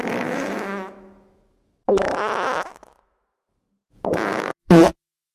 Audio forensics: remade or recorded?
remade